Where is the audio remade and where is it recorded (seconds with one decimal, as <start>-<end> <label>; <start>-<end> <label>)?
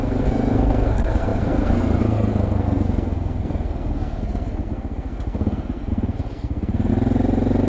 0.0-6.9 remade; 6.9-7.7 recorded